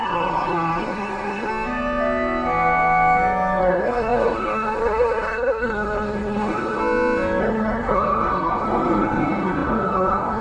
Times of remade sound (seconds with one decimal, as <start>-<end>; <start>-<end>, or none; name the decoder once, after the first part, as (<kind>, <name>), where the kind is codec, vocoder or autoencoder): 0.0-1.5 (codec, SNAC); 3.6-6.8; 7.4-10.4